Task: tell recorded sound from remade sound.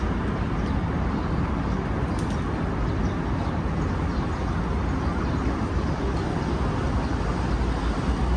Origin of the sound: recorded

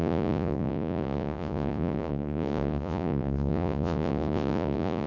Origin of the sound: remade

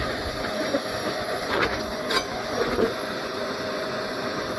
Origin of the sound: remade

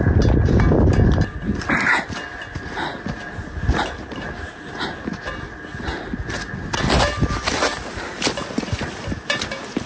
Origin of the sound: recorded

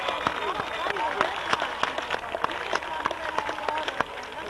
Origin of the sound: recorded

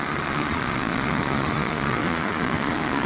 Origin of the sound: remade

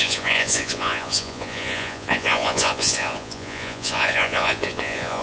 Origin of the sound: remade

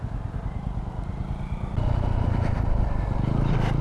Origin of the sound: recorded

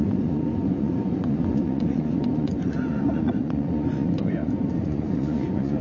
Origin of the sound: remade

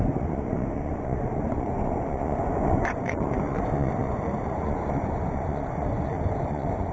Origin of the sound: remade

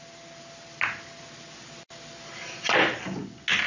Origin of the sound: recorded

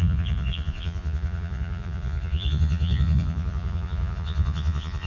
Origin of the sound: remade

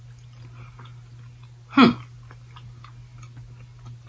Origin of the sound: recorded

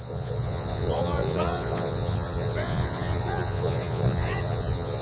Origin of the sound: remade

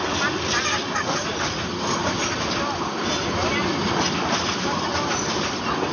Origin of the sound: recorded